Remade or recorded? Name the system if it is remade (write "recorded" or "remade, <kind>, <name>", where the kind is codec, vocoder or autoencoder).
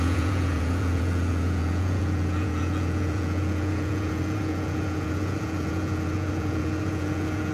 remade, vocoder, Vocos